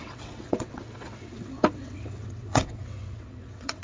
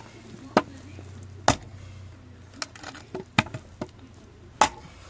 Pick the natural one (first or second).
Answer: second